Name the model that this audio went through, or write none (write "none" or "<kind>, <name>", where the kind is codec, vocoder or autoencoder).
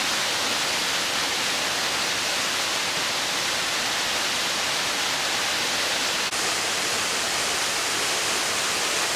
none